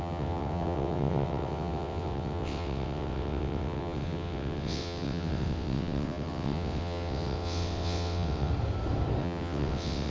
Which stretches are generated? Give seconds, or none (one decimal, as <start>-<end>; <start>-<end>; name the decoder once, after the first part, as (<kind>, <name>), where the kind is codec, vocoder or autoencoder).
0.0-8.5 (vocoder, WaveNeXt); 9.2-10.1